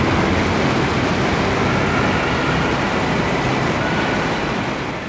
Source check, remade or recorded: recorded